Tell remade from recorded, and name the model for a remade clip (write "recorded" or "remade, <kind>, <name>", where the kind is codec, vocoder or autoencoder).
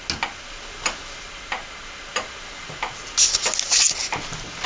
recorded